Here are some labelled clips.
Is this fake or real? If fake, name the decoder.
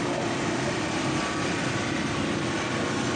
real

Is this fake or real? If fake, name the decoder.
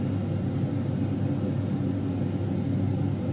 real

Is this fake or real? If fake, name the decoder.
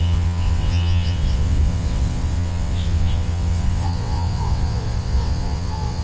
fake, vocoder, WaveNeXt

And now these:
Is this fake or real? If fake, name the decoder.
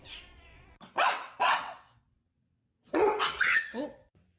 fake, vocoder, WaveNeXt